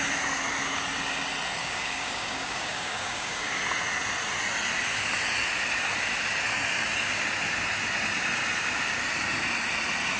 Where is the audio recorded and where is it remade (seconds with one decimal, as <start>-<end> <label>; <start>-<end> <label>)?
0.0-1.6 recorded; 1.6-3.6 remade; 3.6-10.2 recorded